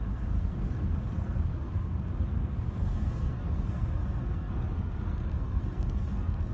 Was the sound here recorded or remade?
remade